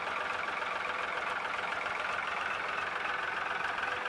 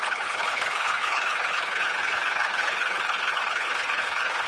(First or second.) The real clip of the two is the first